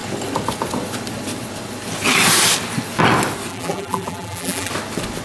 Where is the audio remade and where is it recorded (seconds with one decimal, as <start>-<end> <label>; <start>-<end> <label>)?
0.0-3.5 recorded; 3.5-4.7 remade; 4.7-5.2 recorded